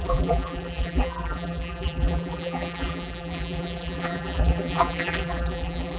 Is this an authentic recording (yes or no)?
no